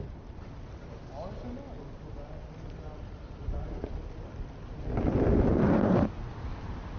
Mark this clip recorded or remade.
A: recorded